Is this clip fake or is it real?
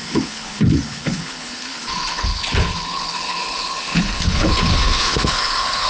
fake